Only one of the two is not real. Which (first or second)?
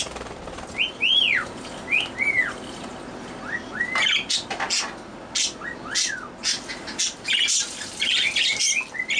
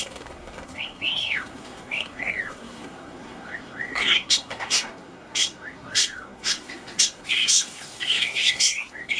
second